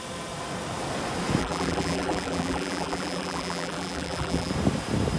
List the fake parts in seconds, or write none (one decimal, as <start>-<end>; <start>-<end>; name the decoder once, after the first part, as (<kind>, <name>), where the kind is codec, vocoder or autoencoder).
1.4-4.5 (vocoder, BigVGAN v2)